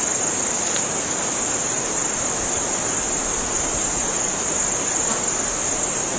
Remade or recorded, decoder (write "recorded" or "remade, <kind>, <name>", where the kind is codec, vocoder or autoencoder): recorded